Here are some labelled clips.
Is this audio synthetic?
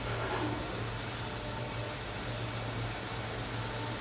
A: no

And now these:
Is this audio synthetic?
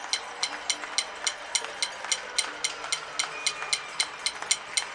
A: no